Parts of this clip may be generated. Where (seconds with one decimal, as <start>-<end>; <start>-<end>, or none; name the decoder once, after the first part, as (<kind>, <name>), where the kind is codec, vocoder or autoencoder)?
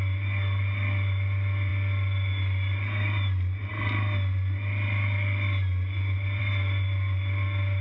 none